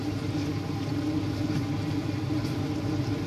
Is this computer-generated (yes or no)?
no